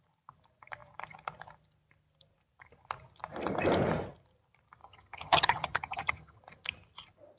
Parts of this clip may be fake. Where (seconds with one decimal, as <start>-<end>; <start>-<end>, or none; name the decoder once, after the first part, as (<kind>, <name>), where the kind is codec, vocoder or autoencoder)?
4.8-6.4 (vocoder, HiFi-GAN)